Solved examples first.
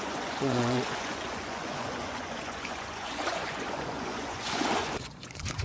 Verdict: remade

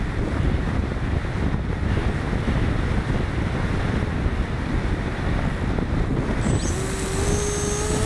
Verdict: recorded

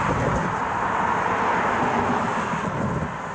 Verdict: recorded